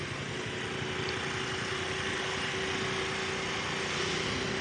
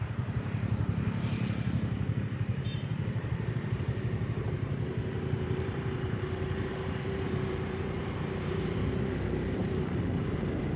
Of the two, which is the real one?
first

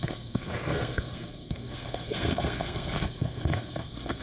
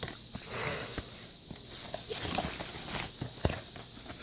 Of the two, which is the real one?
second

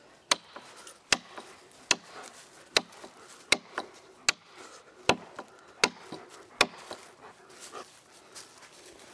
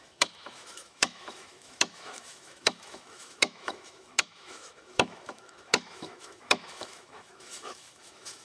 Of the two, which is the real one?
first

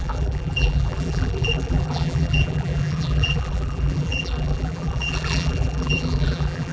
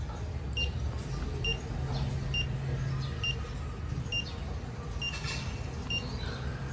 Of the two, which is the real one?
second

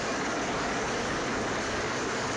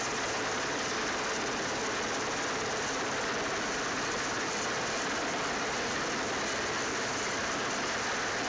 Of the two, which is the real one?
second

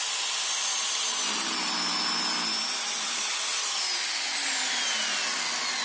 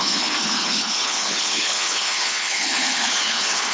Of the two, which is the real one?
first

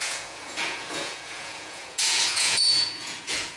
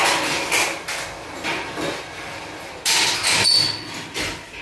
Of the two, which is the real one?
second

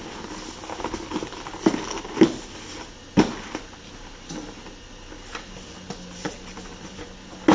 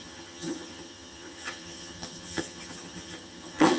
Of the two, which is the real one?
first